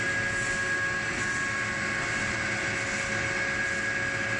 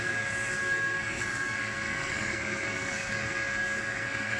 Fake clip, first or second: second